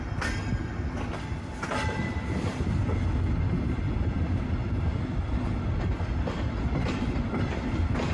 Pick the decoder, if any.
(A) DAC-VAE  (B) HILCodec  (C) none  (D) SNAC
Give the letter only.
C